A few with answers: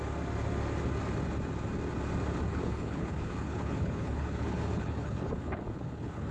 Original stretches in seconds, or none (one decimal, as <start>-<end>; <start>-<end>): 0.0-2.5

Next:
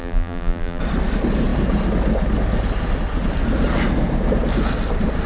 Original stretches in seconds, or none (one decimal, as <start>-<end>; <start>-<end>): 0.8-5.3

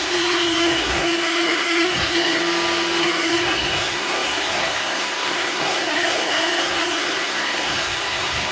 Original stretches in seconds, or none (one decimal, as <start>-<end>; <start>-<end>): 2.4-3.0

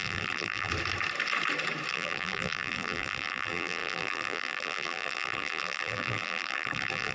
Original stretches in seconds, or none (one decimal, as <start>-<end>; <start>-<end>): 0.7-1.9

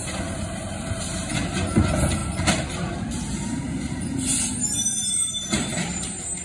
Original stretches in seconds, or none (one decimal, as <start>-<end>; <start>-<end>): none